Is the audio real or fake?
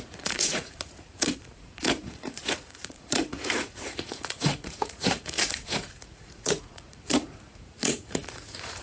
fake